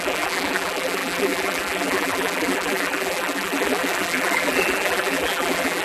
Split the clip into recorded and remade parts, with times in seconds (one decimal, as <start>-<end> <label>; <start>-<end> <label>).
0.0-5.8 remade

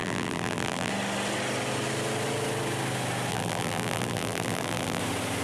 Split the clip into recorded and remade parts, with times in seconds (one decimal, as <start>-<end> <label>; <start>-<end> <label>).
0.0-0.9 remade; 0.9-3.3 recorded; 3.3-5.0 remade; 5.0-5.4 recorded